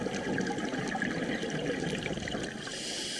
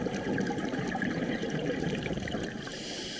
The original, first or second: first